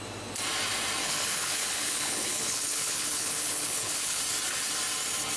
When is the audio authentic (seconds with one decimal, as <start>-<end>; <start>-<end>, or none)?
0.0-1.0; 4.2-5.4